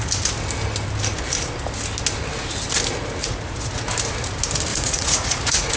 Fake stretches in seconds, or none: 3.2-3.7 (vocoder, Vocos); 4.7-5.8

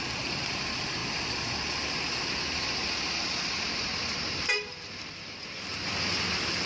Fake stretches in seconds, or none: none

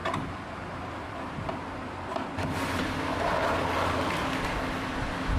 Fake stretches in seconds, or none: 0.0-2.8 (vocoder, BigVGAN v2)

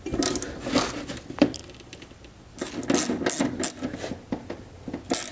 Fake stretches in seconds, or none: none

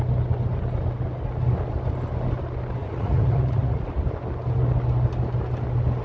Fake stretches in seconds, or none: 2.8-3.8 (vocoder, Vocos)

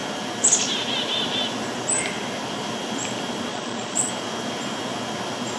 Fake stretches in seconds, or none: 3.5-4.1 (vocoder, Vocos)

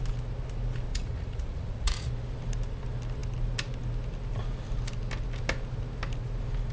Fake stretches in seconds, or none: 0.9-2.1 (vocoder, Vocos)

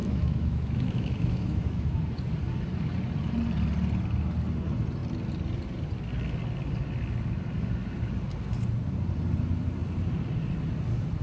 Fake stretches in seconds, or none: 0.0-2.0 (autoencoder, DAC-VAE)